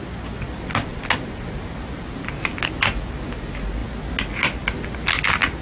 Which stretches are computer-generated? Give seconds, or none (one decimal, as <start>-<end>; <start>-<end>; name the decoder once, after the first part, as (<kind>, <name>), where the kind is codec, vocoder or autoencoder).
none